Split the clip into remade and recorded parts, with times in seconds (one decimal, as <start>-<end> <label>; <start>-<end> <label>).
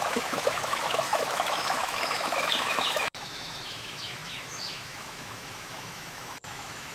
0.0-6.9 remade